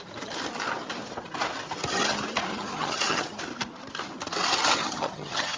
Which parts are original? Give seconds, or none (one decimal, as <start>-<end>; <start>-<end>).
0.0-2.5; 3.4-4.8

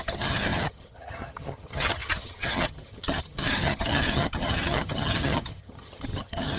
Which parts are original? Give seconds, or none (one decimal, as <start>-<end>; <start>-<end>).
none